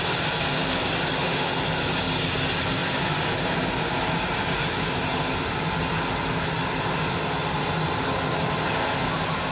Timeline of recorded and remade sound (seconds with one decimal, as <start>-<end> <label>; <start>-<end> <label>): 0.0-9.5 recorded